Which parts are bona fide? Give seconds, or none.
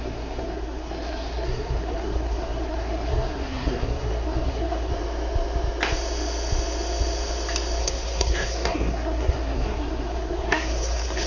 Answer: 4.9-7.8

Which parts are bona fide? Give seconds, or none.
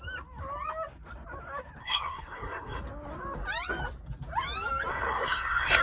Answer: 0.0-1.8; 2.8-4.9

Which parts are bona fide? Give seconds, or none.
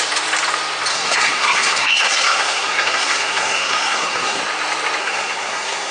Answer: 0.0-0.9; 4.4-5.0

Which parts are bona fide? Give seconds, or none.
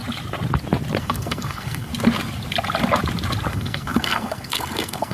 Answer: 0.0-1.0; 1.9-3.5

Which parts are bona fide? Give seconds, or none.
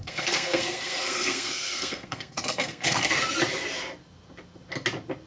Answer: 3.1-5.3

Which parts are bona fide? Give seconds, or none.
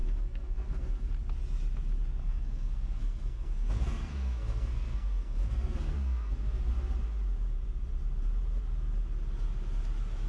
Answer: 1.1-2.2; 6.7-10.3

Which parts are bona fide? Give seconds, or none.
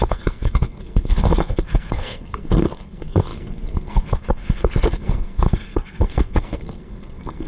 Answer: none